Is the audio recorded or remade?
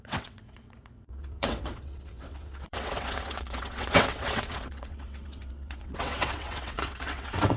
remade